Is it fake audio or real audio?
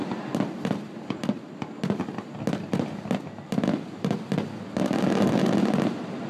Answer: real